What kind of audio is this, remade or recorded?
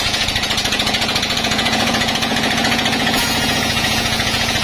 remade